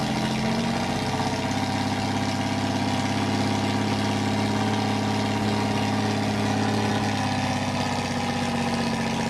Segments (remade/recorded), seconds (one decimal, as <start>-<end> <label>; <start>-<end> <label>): 0.0-9.3 recorded